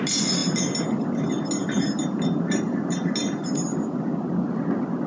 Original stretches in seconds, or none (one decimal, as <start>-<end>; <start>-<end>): 0.0-5.1